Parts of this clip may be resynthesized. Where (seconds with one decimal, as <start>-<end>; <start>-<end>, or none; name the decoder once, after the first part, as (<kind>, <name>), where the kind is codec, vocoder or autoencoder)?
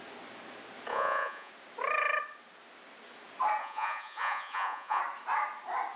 0.9-1.5 (vocoder, Vocos); 3.6-5.0